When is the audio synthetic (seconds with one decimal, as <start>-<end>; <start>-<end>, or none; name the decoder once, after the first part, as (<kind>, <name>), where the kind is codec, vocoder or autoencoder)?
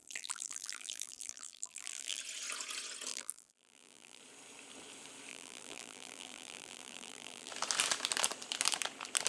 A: 0.0-2.2 (vocoder, BigVGAN v2); 3.1-4.2; 5.3-7.5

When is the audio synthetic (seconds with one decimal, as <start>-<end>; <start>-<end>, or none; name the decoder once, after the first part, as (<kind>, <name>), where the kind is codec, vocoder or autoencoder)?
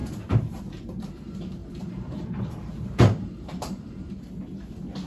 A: 0.0-1.0 (vocoder, BigVGAN v2); 1.6-4.1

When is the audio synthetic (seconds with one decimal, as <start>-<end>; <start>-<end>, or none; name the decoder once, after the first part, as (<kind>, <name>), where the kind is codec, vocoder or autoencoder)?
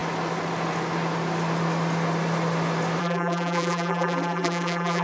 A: 3.0-5.0 (vocoder, BigVGAN v2)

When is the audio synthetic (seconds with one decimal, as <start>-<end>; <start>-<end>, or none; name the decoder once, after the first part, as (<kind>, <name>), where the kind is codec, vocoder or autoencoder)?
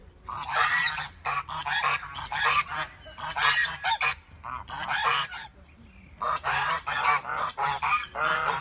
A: 0.0-0.8 (vocoder, BigVGAN v2)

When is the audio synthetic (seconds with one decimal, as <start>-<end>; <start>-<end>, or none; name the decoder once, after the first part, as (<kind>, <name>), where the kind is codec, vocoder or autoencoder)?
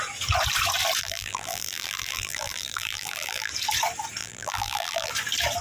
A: 1.0-3.5 (vocoder, BigVGAN v2); 4.2-5.1